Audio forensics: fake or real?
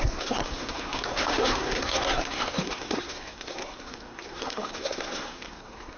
fake